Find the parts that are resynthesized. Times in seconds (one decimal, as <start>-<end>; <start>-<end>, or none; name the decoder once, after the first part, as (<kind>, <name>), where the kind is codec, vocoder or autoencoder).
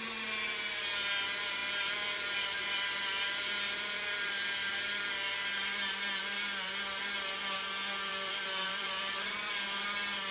1.6-5.0 (vocoder, BigVGAN v2); 8.1-9.1